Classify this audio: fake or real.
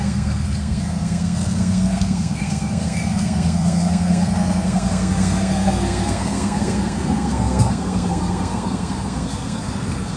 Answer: fake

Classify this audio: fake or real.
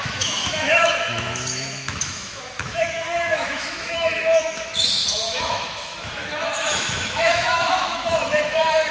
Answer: fake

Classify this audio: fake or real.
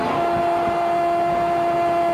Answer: real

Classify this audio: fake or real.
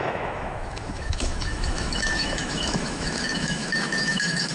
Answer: fake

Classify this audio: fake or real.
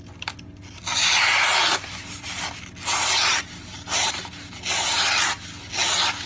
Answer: real